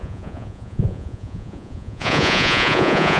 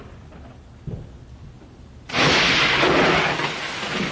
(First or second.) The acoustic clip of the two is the second